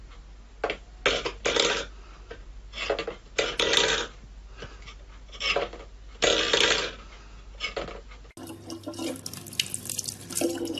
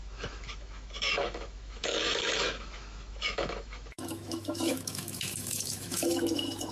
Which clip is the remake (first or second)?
second